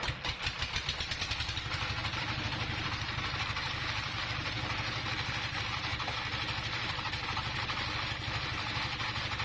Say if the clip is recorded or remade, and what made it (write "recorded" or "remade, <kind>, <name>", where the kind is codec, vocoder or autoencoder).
remade, vocoder, BigVGAN v2